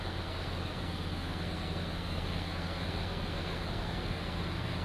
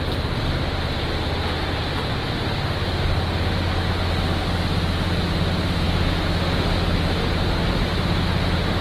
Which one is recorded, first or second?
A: second